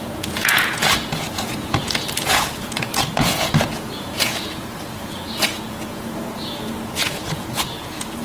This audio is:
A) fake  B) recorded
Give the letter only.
A